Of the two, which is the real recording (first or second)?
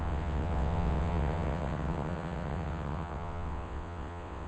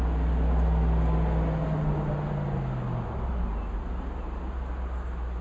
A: second